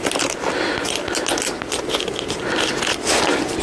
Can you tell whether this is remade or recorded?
recorded